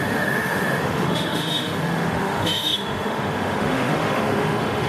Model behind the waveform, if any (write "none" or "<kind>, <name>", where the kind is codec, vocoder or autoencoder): autoencoder, DAC-VAE